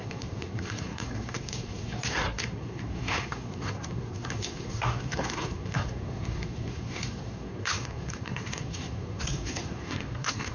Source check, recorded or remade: remade